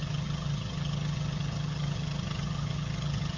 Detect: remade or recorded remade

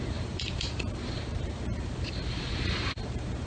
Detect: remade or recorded remade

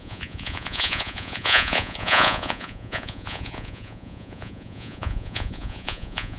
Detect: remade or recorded remade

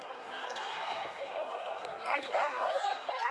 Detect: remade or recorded remade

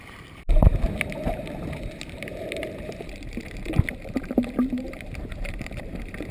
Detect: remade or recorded remade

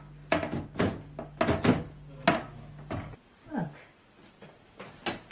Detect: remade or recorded recorded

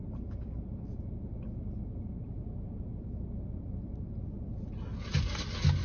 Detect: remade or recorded recorded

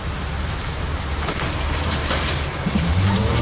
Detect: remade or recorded remade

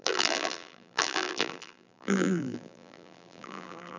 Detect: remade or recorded remade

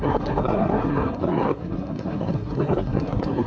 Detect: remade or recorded remade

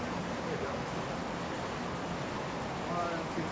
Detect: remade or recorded remade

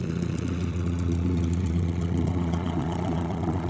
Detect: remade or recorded remade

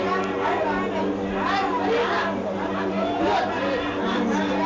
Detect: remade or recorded recorded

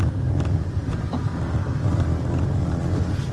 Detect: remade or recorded recorded